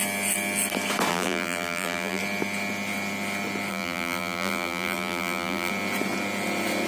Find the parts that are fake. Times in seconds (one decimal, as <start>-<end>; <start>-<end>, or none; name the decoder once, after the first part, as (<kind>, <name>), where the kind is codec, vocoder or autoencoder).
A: 1.1-2.2 (vocoder, BigVGAN v2); 3.7-5.7